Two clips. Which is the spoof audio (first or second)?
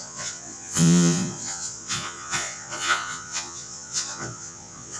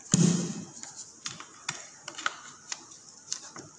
first